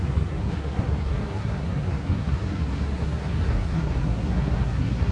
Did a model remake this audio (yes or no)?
yes